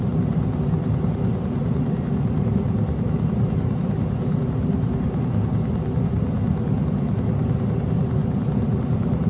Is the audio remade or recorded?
remade